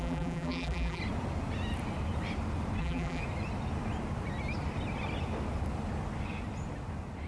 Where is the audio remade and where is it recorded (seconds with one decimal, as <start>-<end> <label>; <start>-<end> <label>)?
0.0-1.0 remade; 1.0-2.8 recorded; 2.8-3.2 remade; 3.2-7.3 recorded